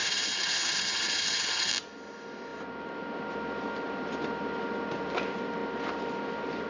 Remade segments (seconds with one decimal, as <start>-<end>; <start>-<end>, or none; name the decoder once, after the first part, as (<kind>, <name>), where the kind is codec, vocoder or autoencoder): 0.0-1.7 (vocoder, HiFi-GAN)